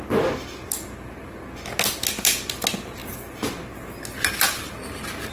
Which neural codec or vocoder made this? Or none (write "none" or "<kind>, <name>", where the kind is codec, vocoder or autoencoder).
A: none